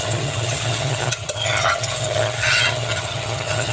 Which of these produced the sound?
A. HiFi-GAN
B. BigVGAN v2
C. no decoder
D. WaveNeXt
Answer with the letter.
A